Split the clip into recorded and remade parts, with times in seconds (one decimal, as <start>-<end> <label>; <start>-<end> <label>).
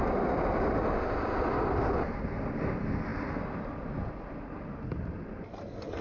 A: 0.0-6.0 recorded